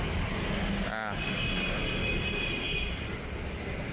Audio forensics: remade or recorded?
recorded